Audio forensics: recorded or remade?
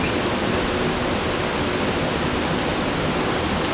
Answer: recorded